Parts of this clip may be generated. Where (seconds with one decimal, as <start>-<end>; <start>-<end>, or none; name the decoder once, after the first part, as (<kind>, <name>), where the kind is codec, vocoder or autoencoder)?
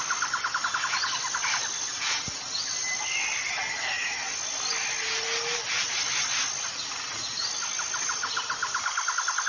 none